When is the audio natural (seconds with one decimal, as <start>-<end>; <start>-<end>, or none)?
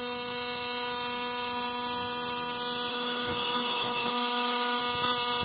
0.0-2.9; 4.8-5.4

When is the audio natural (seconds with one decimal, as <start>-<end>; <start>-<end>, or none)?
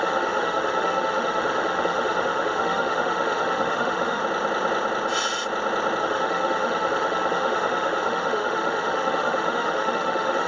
4.2-6.0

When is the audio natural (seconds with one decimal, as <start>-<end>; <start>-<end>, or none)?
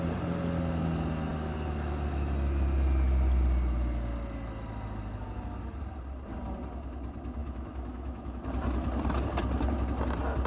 0.0-7.4; 8.4-10.5